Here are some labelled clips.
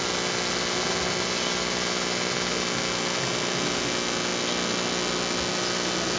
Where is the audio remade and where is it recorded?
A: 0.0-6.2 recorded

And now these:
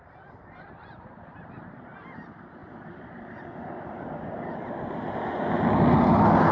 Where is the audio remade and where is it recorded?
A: 0.0-6.5 recorded

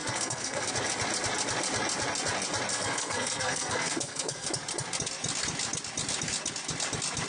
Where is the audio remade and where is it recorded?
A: 0.0-0.7 remade; 0.7-2.7 recorded; 2.7-4.5 remade; 4.5-7.3 recorded